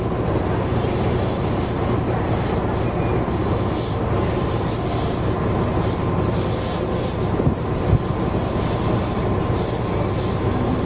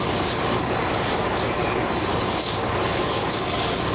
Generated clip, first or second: second